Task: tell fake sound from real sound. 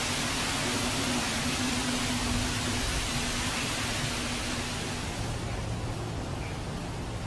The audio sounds real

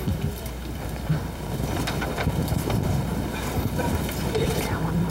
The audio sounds fake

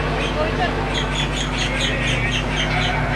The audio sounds real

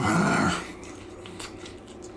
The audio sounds real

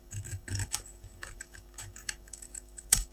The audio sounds fake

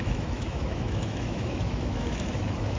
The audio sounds fake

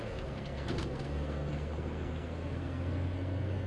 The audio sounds fake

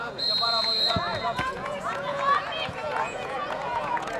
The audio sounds fake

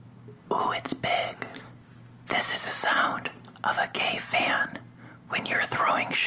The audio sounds real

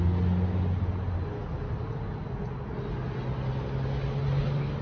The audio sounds real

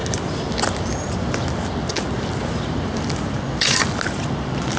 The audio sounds real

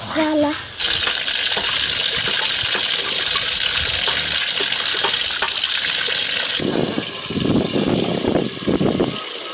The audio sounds real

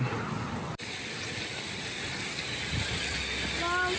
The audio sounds real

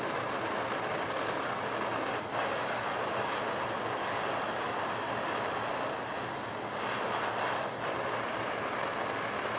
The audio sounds real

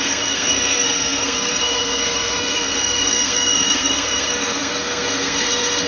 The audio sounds fake